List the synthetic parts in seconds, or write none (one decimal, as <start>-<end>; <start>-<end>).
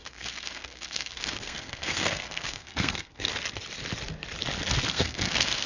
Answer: 0.0-3.3; 4.9-5.7